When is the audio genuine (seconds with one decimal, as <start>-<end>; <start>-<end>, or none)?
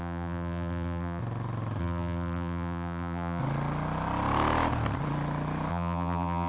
1.2-1.8; 3.4-5.7